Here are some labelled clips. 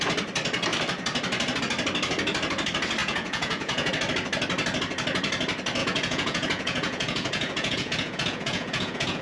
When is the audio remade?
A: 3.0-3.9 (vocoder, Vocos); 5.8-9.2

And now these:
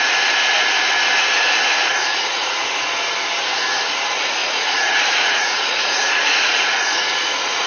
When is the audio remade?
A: 1.9-2.9 (vocoder, Vocos); 4.4-7.7

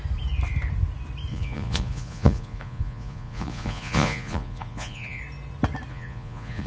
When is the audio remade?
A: 1.3-5.2 (vocoder, Vocos); 5.9-6.7

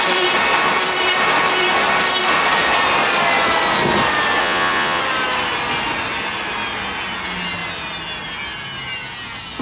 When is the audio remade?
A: 4.4-5.0 (vocoder, Vocos)